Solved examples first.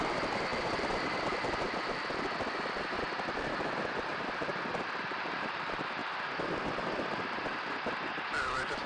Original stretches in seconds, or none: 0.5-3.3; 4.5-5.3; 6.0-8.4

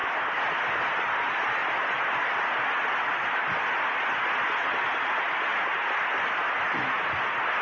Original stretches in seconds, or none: 0.0-7.6

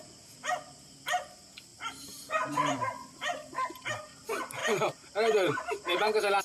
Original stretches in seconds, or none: 0.0-1.7; 3.9-4.6

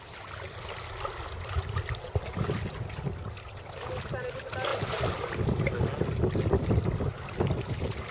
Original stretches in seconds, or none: 0.0-8.1

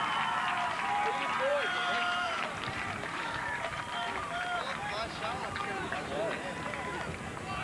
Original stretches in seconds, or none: 0.0-1.5; 4.6-5.6; 6.3-7.6

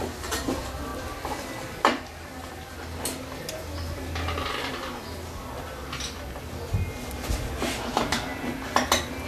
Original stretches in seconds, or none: 0.0-9.3

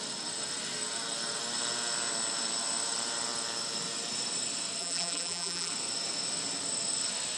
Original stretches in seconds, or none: 0.0-4.8; 5.7-7.4